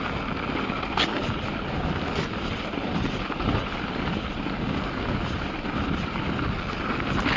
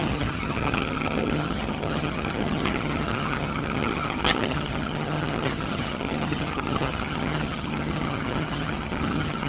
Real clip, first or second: first